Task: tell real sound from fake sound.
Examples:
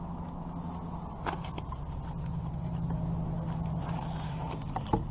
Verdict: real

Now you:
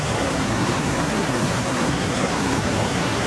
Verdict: fake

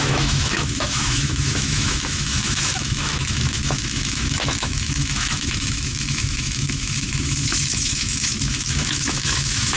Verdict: fake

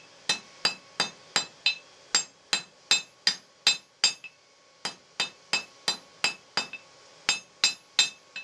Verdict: real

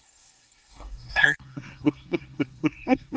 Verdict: fake